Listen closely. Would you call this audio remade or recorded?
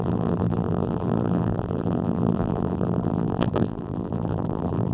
remade